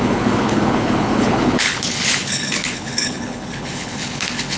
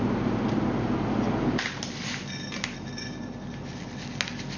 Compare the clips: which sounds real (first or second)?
second